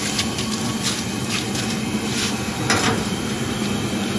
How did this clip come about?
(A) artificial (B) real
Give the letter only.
B